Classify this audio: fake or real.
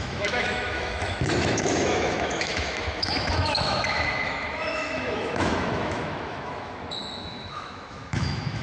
fake